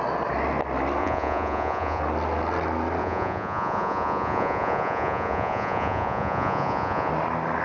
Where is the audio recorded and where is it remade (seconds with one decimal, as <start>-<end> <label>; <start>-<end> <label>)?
0.0-1.0 recorded; 1.0-2.0 remade; 2.0-3.0 recorded; 3.0-7.1 remade; 7.1-7.6 recorded